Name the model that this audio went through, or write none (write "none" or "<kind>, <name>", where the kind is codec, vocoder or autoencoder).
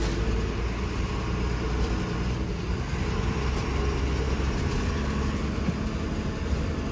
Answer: none